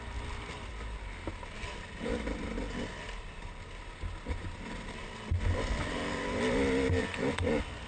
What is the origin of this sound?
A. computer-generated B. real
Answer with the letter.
B